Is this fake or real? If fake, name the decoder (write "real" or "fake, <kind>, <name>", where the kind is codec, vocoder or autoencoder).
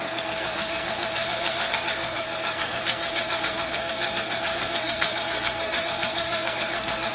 fake, codec, SNAC